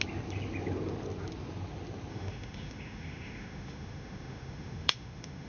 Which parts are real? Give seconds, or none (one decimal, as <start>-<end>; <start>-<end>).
0.0-2.1